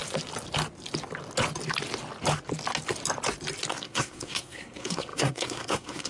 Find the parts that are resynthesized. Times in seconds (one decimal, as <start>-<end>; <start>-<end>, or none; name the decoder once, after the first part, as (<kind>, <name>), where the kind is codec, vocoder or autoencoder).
3.7-6.1 (codec, SNAC)